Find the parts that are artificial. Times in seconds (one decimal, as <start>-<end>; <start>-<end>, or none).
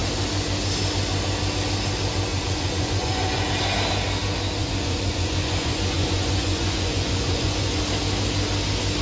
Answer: 2.3-3.5; 4.6-7.8